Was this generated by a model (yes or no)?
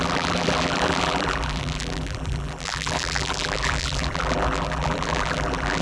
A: yes